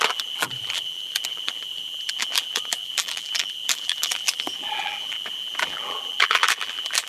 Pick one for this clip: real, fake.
fake